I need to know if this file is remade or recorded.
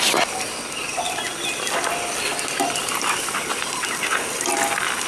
recorded